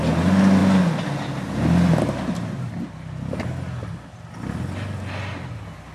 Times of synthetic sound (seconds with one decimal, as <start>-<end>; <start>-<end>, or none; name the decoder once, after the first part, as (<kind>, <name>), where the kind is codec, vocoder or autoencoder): none